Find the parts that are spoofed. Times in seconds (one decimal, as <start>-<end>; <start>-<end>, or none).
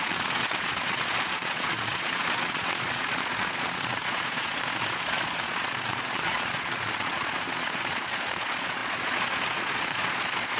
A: 0.0-10.6